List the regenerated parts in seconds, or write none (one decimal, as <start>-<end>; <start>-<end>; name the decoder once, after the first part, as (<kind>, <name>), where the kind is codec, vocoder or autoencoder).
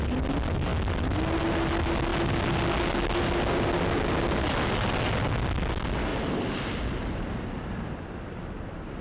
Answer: 6.1-6.8 (vocoder, BigVGAN v2)